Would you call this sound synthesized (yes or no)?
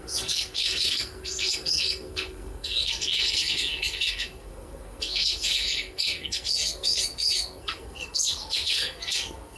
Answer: yes